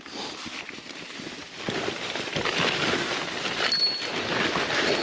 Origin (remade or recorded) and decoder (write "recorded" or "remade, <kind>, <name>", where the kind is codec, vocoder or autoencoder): recorded